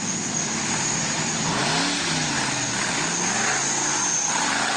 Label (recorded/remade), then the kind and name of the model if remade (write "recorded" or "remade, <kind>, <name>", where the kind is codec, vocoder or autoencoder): recorded